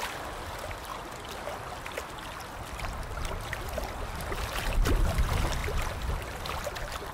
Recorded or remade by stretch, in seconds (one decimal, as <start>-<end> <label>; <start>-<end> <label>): 0.0-7.1 recorded